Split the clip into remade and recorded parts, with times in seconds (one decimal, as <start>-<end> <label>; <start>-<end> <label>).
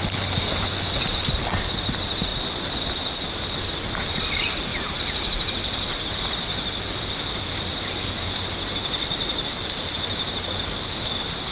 0.0-2.3 remade; 2.3-4.1 recorded; 4.1-11.5 remade